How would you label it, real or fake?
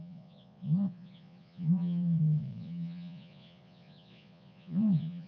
fake